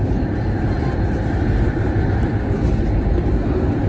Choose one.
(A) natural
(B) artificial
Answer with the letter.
B